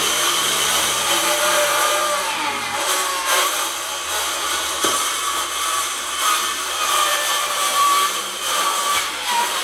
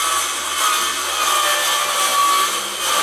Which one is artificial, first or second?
first